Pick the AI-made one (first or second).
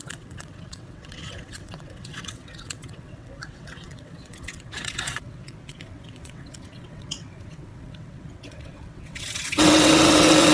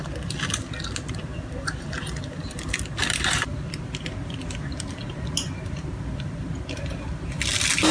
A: first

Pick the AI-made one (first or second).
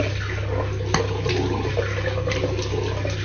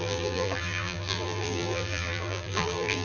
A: second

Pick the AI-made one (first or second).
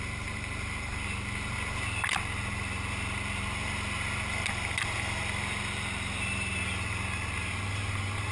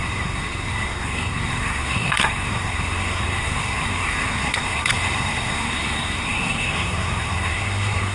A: second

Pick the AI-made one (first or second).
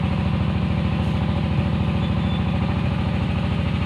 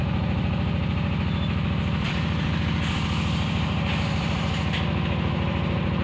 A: second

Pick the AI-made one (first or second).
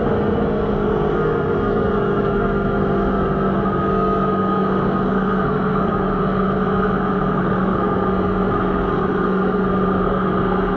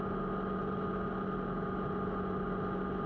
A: first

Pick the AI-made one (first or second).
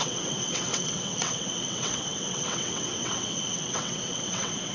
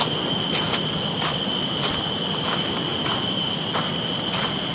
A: first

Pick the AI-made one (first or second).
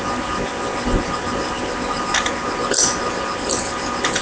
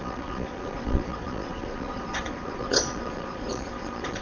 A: second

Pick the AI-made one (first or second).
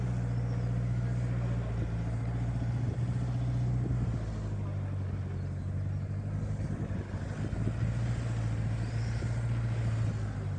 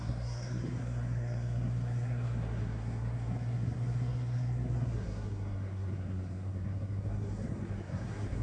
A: second